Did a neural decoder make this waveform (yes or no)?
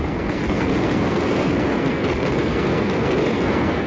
yes